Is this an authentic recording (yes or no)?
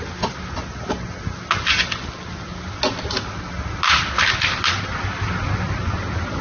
yes